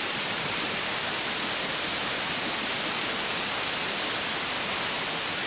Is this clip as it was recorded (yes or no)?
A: no